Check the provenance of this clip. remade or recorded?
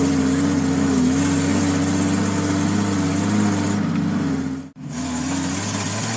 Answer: recorded